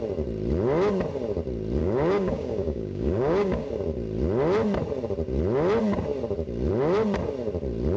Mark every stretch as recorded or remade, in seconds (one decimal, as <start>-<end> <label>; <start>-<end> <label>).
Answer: 0.0-1.8 recorded; 1.8-3.7 remade; 3.7-8.0 recorded